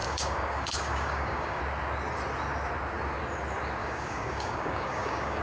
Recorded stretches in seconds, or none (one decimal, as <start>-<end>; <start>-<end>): 1.6-3.8